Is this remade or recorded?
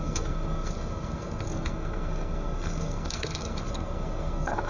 remade